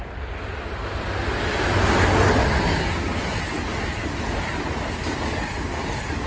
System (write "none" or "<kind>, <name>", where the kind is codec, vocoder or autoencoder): none